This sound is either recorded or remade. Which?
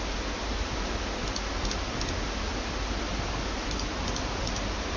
recorded